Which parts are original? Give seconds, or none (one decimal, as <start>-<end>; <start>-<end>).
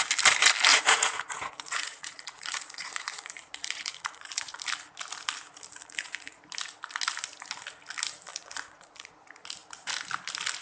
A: 0.0-0.7; 4.6-5.8; 6.4-8.3; 9.2-10.6